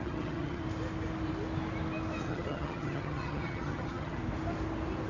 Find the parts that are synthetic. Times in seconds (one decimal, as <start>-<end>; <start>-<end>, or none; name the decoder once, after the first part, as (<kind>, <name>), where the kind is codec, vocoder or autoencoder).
0.0-0.6 (vocoder, HiFi-GAN); 2.2-4.2